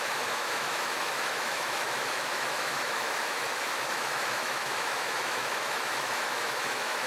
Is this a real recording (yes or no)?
no